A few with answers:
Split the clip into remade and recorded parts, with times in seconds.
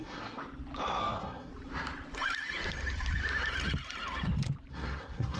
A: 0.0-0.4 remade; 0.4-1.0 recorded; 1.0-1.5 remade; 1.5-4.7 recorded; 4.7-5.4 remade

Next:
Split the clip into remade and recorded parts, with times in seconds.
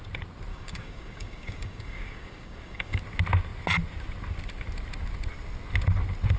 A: 0.0-0.5 recorded; 0.5-3.0 remade; 3.0-6.4 recorded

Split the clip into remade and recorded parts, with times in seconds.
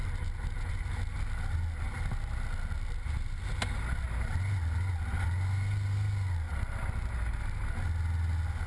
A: 0.0-8.7 recorded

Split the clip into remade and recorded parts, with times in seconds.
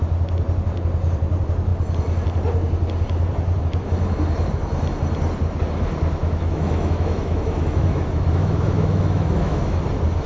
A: 0.0-6.2 recorded; 6.2-9.8 remade; 9.8-10.3 recorded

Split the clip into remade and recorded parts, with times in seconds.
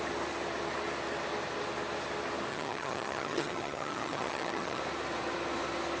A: 0.0-2.5 recorded; 2.5-4.8 remade; 4.8-6.0 recorded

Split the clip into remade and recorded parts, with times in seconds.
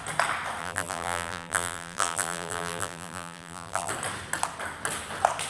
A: 0.0-0.6 recorded; 0.6-3.9 remade; 3.9-5.5 recorded